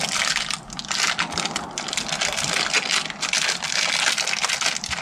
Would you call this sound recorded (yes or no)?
yes